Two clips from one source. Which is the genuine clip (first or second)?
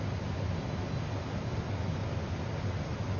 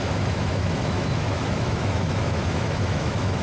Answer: first